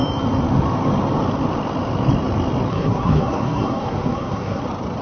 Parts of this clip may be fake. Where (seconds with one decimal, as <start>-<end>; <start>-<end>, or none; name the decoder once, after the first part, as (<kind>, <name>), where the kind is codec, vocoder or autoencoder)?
2.7-4.6 (codec, SNAC)